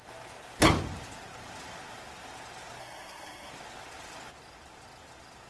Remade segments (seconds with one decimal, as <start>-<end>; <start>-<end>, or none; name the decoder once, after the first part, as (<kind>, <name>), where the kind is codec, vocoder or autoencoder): 2.8-3.5 (codec, SNAC)